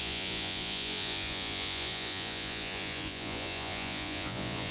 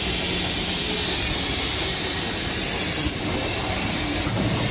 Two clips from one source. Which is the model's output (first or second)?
first